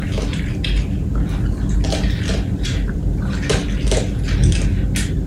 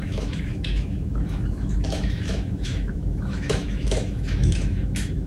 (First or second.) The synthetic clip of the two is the second